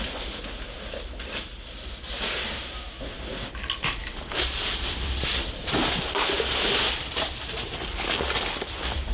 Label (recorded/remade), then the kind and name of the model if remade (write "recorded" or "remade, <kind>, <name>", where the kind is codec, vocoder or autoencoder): recorded